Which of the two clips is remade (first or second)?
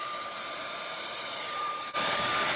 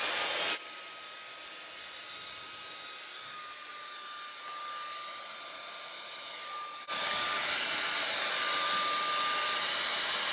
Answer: first